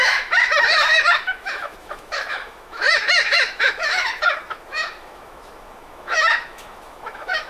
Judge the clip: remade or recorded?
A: remade